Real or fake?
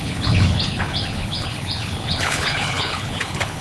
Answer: fake